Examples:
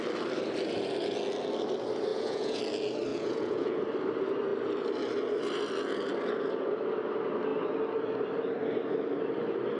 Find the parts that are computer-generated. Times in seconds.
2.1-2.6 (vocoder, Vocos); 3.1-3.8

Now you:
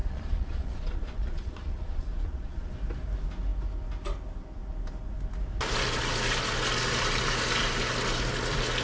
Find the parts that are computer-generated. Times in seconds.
0.0-2.7 (vocoder, Vocos)

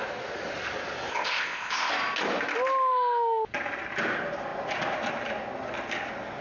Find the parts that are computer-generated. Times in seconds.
1.1-1.9 (codec, ZipCodec)

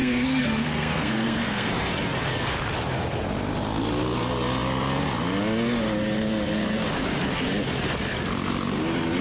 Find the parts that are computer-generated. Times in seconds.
0.0-1.7 (codec, SNAC)

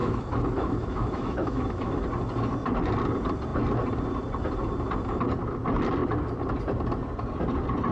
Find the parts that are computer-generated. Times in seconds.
0.0-2.0 (autoencoder, DAC-VAE)

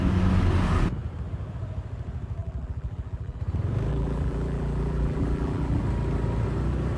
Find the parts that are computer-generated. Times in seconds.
2.4-3.4 (vocoder, BigVGAN v2); 3.9-5.8